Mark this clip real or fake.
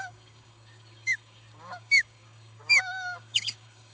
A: fake